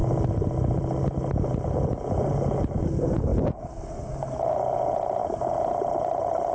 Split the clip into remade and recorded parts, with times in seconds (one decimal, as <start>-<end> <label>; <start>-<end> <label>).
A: 0.0-6.5 recorded